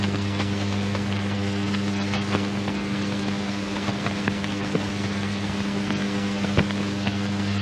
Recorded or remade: remade